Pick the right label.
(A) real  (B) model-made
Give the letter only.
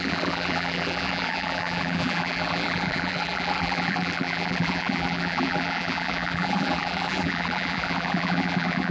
B